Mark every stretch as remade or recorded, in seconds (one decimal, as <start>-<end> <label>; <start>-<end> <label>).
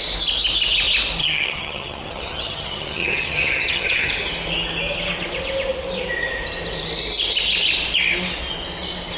0.0-1.2 recorded; 1.2-4.1 remade; 4.1-9.2 recorded